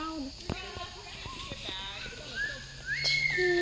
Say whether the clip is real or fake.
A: real